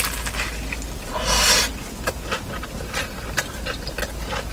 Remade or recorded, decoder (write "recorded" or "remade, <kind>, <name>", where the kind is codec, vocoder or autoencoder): recorded